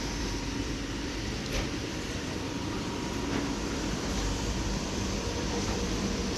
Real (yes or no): no